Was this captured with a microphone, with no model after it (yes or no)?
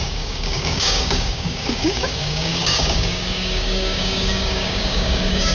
no